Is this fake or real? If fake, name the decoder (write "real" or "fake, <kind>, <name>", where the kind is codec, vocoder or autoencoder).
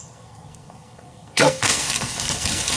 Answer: fake, codec, SNAC